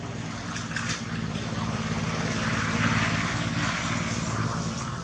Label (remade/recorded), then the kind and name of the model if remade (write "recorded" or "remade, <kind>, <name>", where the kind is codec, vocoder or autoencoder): recorded